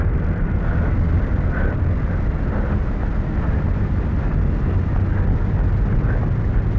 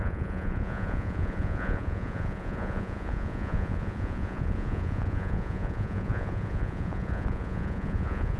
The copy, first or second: second